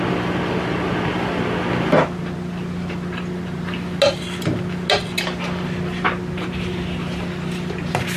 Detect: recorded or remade recorded